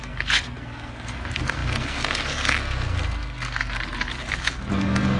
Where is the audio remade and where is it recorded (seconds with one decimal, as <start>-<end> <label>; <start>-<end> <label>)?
0.0-5.2 remade